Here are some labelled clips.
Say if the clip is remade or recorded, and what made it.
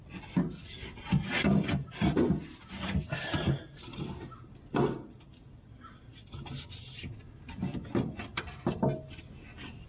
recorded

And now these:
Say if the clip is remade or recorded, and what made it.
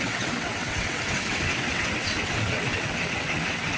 remade, vocoder, WaveNeXt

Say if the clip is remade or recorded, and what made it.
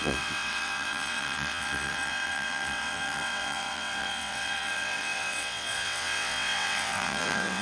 remade, vocoder, WaveNeXt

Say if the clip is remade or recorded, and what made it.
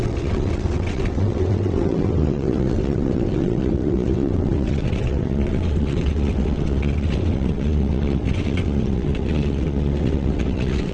remade, vocoder, WaveNeXt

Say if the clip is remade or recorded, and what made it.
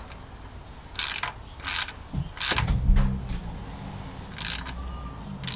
recorded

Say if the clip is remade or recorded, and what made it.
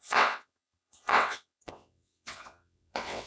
remade, vocoder, WaveNeXt